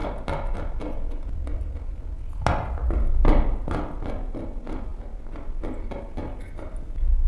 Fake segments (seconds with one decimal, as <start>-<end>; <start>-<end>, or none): none